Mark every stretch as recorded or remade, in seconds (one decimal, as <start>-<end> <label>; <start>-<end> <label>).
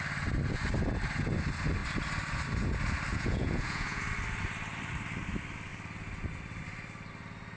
0.0-3.1 recorded; 3.1-4.0 remade; 4.0-7.6 recorded